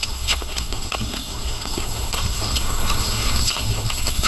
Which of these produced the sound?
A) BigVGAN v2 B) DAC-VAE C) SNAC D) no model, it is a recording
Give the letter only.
C